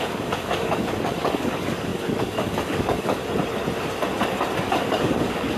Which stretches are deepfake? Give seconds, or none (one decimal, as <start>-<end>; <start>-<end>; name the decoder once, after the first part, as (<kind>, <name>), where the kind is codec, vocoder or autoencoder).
0.0-3.2 (codec, DAC); 4.6-5.6